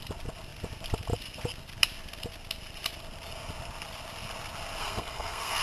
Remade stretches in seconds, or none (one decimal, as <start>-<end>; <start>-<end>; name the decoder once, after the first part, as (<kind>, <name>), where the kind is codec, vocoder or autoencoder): 4.8-5.6 (codec, SNAC)